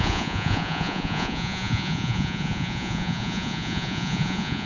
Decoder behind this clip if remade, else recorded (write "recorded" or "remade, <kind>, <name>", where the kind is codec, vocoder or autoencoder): remade, vocoder, Vocos